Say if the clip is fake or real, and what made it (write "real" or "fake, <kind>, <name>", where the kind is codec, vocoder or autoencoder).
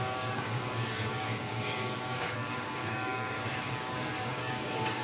fake, codec, DAC